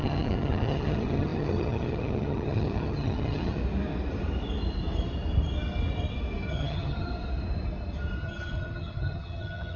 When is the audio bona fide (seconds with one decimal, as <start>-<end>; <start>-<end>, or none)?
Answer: 3.6-6.5; 7.1-8.2